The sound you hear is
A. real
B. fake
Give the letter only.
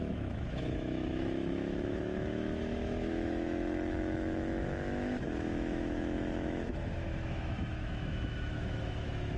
B